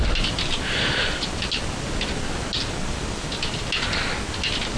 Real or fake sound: real